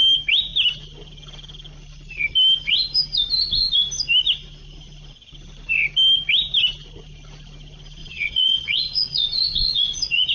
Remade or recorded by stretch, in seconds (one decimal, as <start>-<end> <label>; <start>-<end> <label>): 0.0-8.0 recorded; 8.0-10.3 remade